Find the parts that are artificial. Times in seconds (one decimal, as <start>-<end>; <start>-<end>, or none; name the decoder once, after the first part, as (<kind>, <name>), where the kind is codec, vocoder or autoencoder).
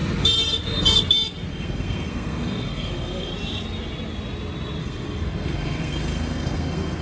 1.5-3.3 (codec, SNAC); 4.8-7.0